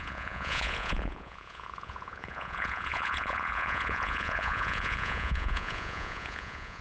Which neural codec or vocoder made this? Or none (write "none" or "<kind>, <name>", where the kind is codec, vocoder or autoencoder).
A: vocoder, Vocos